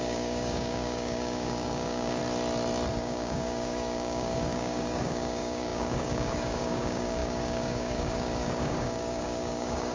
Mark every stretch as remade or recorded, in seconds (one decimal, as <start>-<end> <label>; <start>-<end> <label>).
0.0-2.2 remade; 2.2-2.9 recorded; 2.9-9.9 remade